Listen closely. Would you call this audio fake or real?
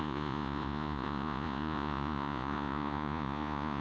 fake